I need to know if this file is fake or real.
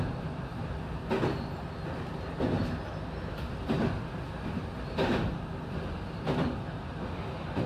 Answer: real